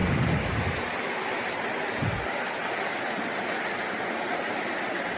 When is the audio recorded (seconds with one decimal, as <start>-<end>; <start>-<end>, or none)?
3.1-5.2